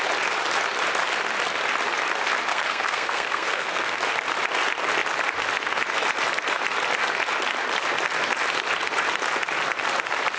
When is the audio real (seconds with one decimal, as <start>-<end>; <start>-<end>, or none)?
0.0-2.5; 4.0-10.4